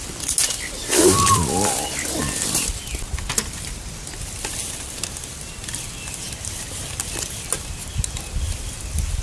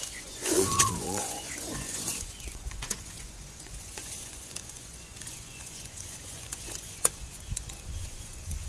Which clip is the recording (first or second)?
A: first